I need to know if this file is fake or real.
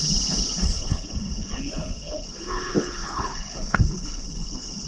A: fake